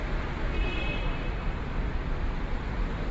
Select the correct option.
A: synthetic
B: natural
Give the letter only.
A